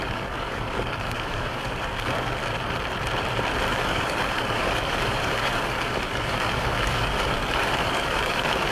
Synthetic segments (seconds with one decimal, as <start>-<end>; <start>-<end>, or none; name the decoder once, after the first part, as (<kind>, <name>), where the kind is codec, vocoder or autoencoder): 0.0-2.4 (codec, DAC); 3.7-8.7